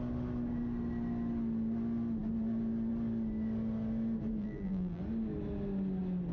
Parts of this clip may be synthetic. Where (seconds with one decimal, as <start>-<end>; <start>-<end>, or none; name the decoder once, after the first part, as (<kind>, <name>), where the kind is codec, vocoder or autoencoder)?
4.4-5.0 (vocoder, BigVGAN v2)